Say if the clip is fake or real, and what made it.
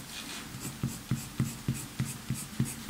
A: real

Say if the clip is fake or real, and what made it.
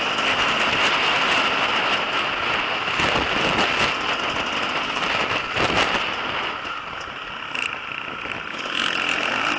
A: real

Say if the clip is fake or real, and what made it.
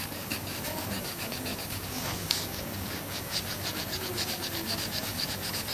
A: fake, codec, DAC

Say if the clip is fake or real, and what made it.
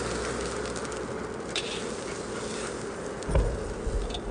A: real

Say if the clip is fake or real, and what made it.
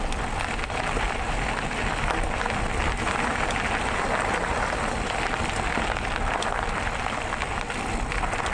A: real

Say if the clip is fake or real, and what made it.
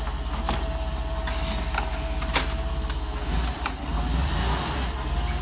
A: real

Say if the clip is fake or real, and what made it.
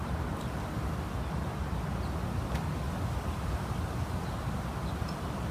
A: real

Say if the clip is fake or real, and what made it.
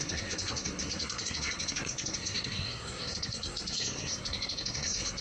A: fake, codec, SNAC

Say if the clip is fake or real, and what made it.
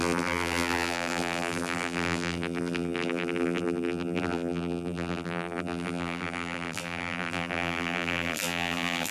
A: fake, vocoder, BigVGAN v2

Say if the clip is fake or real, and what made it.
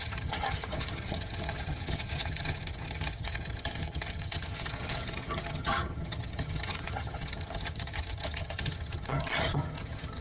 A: fake, vocoder, HiFi-GAN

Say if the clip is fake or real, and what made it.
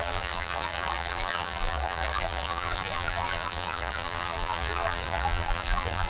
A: fake, vocoder, BigVGAN v2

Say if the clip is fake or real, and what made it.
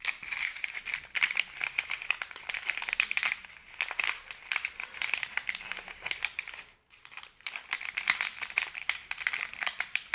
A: fake, vocoder, BigVGAN v2